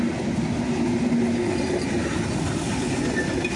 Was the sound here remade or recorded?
recorded